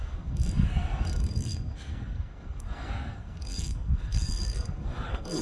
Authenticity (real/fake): fake